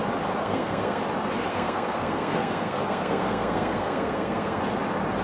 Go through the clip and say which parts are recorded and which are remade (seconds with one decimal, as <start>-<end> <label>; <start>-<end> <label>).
0.0-0.4 recorded; 0.4-1.0 remade; 1.0-1.5 recorded; 1.5-4.6 remade; 4.6-5.2 recorded

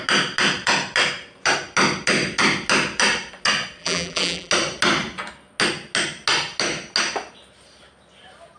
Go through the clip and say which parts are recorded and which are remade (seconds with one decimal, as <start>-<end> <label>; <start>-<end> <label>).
0.0-3.8 recorded; 3.8-4.5 remade; 4.5-8.6 recorded